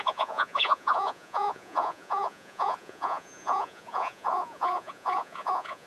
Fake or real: fake